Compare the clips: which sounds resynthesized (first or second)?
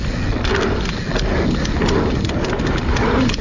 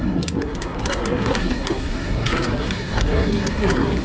second